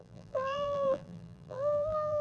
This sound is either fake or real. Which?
fake